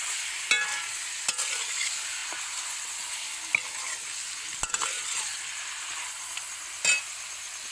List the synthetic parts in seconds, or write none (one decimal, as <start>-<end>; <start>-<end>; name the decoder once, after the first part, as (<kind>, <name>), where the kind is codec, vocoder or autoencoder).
none